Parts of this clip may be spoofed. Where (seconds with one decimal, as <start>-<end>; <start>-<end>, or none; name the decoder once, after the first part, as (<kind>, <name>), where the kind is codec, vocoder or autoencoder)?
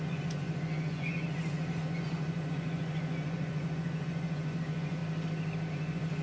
0.0-5.0 (vocoder, Vocos); 5.7-6.2